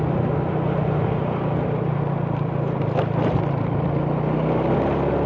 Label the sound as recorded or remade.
recorded